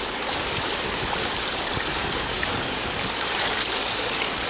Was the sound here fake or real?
fake